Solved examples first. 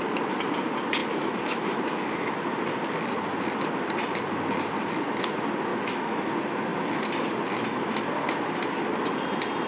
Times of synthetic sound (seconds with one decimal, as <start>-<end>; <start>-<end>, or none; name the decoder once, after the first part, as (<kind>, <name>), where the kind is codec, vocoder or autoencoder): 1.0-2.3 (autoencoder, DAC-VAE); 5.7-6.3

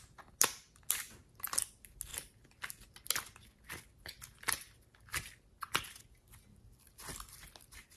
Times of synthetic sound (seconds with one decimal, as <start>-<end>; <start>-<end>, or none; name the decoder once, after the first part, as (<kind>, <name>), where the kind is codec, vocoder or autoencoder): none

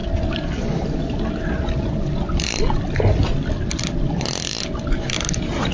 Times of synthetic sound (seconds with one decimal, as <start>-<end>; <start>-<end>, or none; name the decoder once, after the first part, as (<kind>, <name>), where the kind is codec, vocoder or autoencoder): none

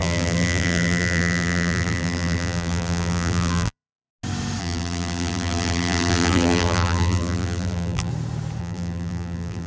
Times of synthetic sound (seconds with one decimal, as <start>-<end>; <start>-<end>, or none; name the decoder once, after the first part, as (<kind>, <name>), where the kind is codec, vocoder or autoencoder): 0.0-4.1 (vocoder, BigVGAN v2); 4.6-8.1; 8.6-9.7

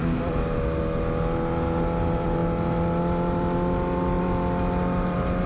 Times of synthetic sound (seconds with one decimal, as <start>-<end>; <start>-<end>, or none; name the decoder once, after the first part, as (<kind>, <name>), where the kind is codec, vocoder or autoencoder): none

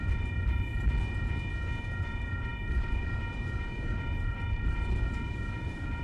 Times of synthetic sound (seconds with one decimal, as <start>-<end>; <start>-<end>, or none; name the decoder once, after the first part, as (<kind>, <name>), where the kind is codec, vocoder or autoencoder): 0.0-0.7 (vocoder, BigVGAN v2); 1.8-6.0

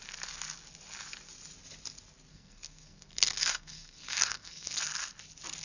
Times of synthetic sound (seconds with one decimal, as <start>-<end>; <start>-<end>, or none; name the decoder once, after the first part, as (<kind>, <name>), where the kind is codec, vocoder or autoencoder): 2.3-4.8 (codec, SNAC)